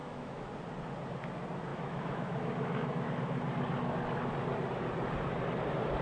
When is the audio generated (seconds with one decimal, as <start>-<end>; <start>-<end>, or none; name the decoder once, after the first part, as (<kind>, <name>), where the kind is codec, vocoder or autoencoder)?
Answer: 0.0-0.5 (autoencoder, DAC-VAE); 1.7-3.1